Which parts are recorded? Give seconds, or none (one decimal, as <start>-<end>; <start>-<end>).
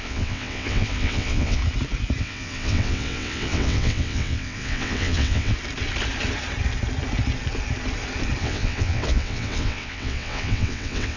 1.6-2.2; 5.5-8.4